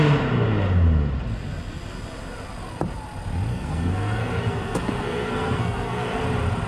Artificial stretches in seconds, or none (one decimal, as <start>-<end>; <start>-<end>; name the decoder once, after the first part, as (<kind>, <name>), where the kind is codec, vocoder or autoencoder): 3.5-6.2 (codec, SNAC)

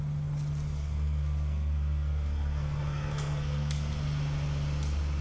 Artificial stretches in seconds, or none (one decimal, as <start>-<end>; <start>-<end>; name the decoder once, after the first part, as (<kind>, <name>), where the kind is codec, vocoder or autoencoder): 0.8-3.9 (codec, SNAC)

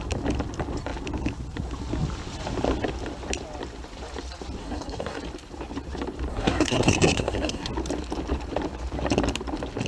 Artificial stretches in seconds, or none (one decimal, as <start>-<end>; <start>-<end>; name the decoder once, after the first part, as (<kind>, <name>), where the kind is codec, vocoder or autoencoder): 4.6-5.2 (codec, SNAC); 6.3-7.7

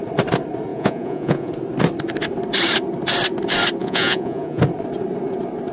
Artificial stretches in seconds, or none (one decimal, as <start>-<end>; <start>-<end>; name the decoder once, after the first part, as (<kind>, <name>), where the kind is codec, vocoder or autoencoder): 0.7-1.5 (vocoder, Vocos); 3.8-4.6

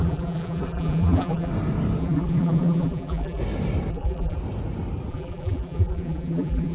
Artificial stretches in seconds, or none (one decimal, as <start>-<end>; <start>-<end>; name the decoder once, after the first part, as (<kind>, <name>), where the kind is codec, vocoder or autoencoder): 0.0-1.5 (vocoder, BigVGAN v2); 2.0-3.4; 3.9-4.4; 5.1-6.7

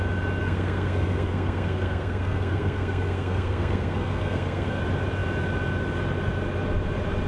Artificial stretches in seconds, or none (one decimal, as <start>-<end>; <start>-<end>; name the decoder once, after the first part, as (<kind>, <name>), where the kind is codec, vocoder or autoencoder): 0.4-4.8 (codec, SNAC)